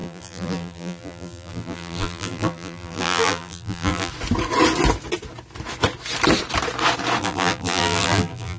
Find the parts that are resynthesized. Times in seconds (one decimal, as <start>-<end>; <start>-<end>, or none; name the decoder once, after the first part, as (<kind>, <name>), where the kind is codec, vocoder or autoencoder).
0.0-4.1 (vocoder, BigVGAN v2); 7.2-8.6